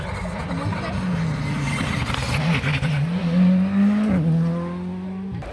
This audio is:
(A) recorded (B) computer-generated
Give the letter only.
A